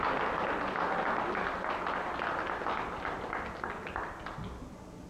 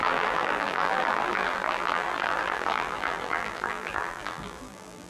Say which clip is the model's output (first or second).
second